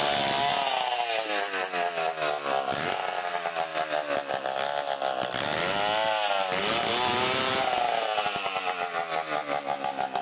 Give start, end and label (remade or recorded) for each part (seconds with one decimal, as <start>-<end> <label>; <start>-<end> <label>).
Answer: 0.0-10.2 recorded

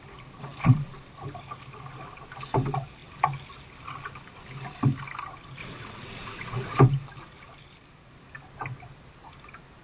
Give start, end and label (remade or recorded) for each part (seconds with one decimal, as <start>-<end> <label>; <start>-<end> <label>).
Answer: 0.0-5.6 recorded; 5.6-6.8 remade; 6.8-9.8 recorded

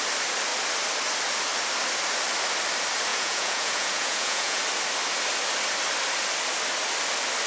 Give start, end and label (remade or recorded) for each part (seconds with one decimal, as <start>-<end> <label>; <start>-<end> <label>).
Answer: 0.0-3.1 recorded; 3.1-4.6 remade; 4.6-7.5 recorded

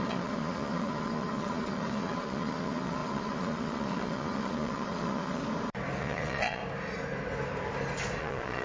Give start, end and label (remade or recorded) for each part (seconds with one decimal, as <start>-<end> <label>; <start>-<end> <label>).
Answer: 0.0-5.4 remade; 5.4-6.0 recorded; 6.0-6.6 remade; 6.6-8.2 recorded; 8.2-8.6 remade